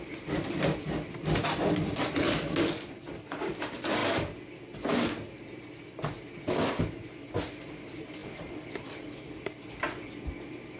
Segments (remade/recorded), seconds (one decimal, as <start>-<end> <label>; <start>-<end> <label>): 0.0-4.0 remade; 4.0-7.7 recorded; 7.7-10.8 remade